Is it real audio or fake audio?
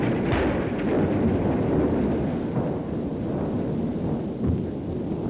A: real